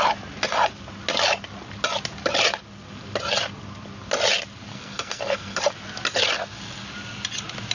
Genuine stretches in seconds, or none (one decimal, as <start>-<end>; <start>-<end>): 0.0-4.7; 5.6-7.7